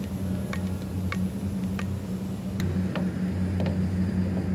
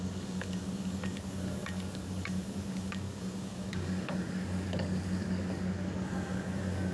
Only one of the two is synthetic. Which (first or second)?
second